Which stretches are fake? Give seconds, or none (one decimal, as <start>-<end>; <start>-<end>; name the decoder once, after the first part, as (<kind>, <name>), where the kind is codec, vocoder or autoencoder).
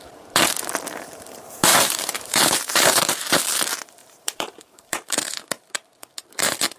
1.7-3.3 (vocoder, BigVGAN v2); 4.0-6.0